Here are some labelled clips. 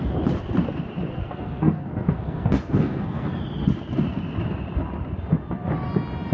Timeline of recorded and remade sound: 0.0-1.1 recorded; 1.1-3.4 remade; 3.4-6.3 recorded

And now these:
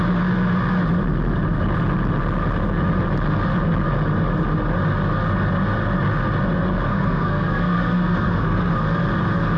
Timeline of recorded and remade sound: 0.0-6.9 recorded; 6.9-8.7 remade; 8.7-9.6 recorded

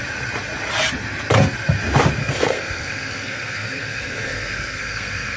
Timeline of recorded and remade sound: 0.0-2.2 recorded; 2.2-5.4 remade